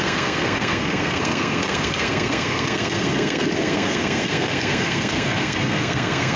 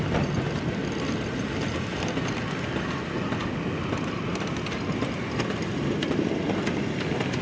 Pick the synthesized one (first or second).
first